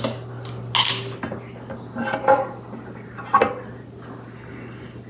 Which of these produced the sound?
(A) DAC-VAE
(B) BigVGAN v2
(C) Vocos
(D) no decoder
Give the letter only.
D